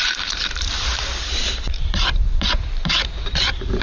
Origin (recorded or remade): remade